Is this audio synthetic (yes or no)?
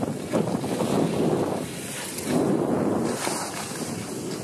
no